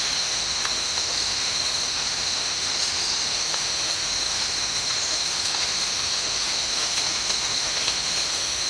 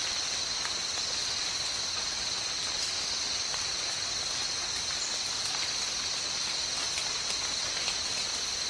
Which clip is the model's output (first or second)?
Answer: first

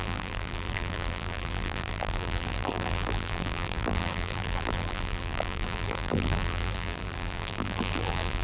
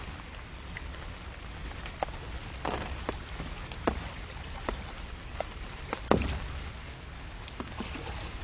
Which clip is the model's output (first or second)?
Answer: first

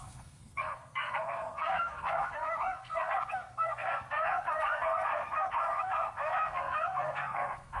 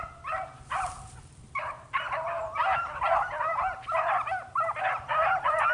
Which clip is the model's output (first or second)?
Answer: first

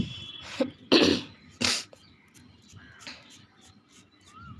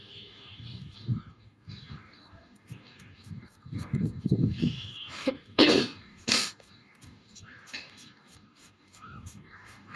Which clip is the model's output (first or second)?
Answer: second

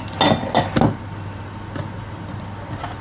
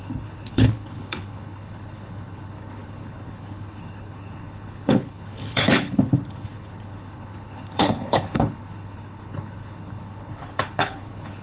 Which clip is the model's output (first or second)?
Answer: second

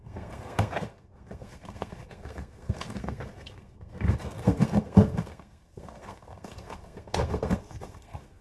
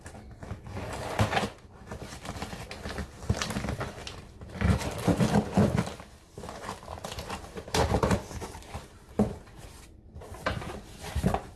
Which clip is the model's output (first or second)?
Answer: first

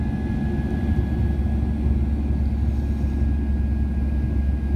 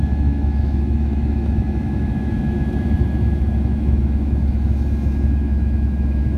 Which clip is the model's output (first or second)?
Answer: second